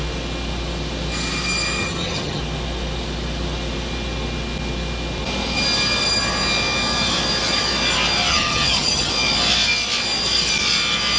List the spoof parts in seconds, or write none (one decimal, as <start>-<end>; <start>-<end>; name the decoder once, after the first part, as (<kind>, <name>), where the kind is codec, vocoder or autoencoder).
1.8-2.4 (vocoder, HiFi-GAN); 8.3-9.1